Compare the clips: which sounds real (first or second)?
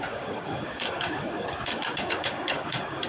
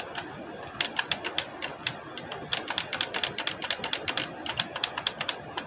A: second